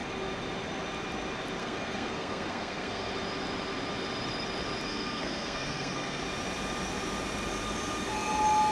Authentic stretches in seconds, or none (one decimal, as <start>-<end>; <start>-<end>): 0.0-1.6; 3.1-4.9; 6.2-8.7